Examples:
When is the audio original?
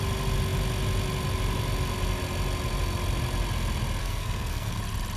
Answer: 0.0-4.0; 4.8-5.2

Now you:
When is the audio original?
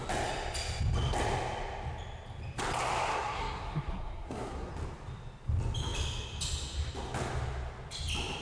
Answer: 0.0-3.1; 4.7-8.4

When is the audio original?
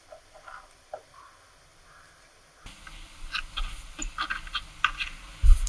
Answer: 0.0-5.7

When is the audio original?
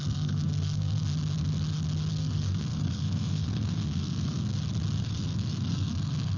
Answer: 1.1-2.1; 4.5-5.0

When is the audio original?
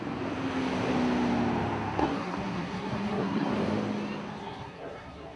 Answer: 0.0-2.0; 3.5-4.4